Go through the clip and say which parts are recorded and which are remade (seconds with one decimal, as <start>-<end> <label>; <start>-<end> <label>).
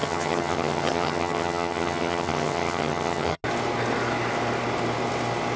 0.0-3.4 remade; 3.4-5.6 recorded